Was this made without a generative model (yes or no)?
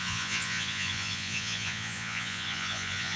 no